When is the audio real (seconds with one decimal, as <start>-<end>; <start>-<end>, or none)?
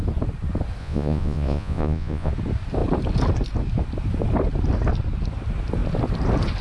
0.0-0.8; 2.3-6.6